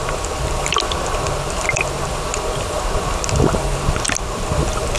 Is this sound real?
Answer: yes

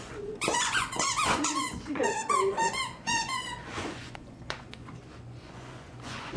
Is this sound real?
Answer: no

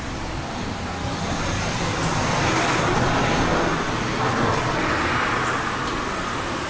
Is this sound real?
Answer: yes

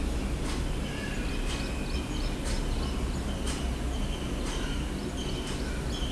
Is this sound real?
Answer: yes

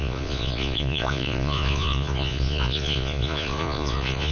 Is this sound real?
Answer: no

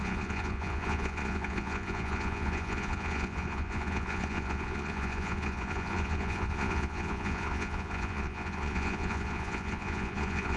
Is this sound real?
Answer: no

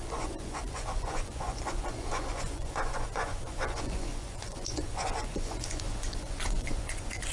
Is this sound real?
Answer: no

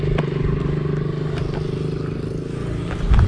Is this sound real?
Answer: yes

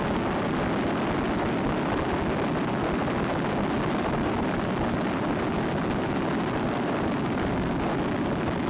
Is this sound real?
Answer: yes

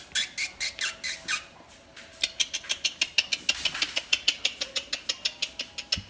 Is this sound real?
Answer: yes